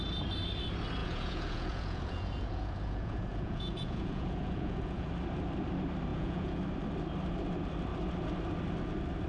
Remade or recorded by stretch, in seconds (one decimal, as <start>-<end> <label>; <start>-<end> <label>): 0.0-1.0 recorded; 1.0-5.1 remade; 5.1-6.1 recorded; 6.1-6.6 remade; 6.6-9.3 recorded